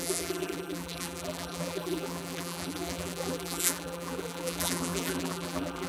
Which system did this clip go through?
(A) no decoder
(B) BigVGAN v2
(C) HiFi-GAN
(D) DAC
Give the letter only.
B